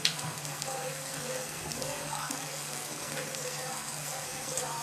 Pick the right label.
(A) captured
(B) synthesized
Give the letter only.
B